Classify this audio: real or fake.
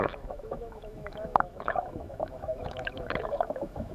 fake